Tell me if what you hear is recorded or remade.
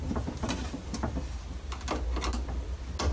recorded